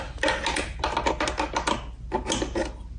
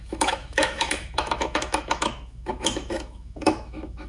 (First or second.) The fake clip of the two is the second